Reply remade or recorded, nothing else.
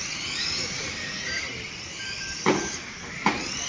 recorded